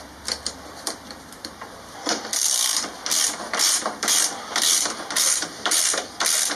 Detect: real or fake fake